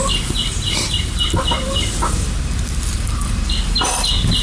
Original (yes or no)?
no